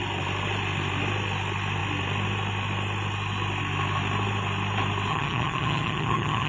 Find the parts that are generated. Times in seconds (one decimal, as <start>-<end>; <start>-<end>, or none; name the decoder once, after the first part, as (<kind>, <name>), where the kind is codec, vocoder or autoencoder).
5.1-6.5 (vocoder, HiFi-GAN)